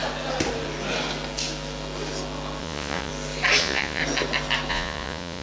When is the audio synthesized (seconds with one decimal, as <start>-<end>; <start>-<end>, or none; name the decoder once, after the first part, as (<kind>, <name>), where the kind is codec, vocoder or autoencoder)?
2.6-3.1 (vocoder, Vocos); 3.6-4.0; 4.7-5.4